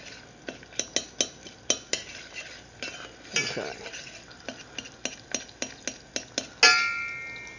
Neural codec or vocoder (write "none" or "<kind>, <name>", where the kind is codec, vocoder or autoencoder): none